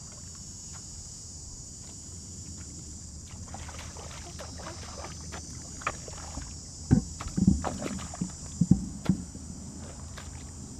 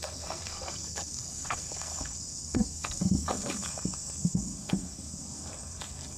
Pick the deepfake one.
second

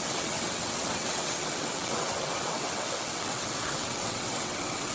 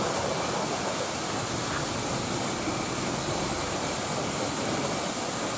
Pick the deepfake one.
first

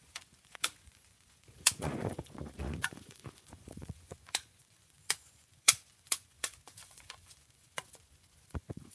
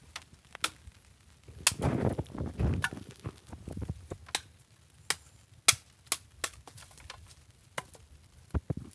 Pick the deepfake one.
first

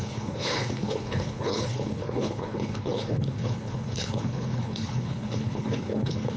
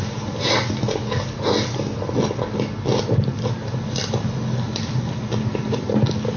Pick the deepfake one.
first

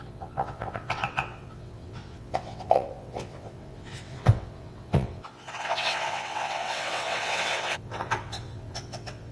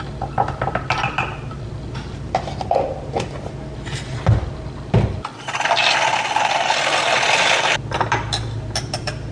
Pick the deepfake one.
first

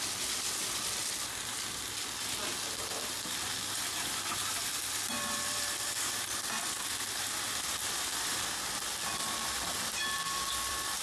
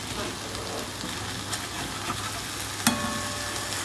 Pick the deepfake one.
first